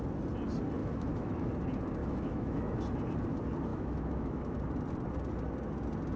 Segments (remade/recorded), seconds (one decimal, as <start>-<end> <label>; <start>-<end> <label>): 0.0-0.8 recorded; 0.8-1.5 remade; 1.5-2.0 recorded; 2.0-2.8 remade; 2.8-3.7 recorded; 3.7-4.6 remade; 4.6-6.2 recorded

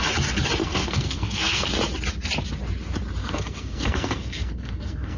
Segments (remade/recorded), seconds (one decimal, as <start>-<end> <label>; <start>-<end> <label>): 0.0-0.6 recorded; 0.6-1.7 remade; 1.7-3.2 recorded; 3.2-5.2 remade

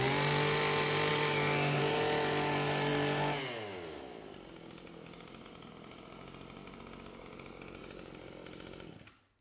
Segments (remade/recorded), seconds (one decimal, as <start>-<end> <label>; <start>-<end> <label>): 0.0-1.1 recorded; 1.1-1.8 remade; 1.8-9.4 recorded

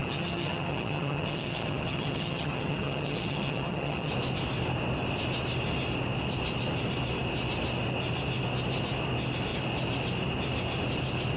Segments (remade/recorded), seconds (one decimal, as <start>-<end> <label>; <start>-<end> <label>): 0.0-4.1 remade; 4.1-11.4 recorded

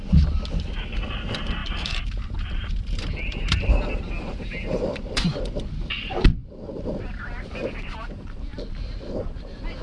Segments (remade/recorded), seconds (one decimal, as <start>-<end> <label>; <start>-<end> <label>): 0.0-1.6 recorded; 1.6-5.7 remade; 5.7-9.8 recorded

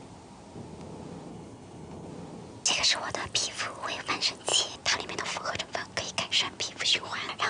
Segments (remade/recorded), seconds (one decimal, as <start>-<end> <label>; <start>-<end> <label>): 0.0-1.3 recorded; 1.3-2.1 remade; 2.1-7.5 recorded

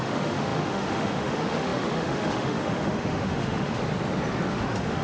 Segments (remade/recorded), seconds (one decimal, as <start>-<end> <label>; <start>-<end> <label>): 0.0-3.8 remade; 3.8-4.5 recorded; 4.5-5.0 remade

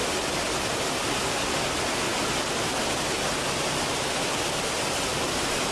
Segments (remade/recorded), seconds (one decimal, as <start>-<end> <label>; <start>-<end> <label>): 0.0-5.7 recorded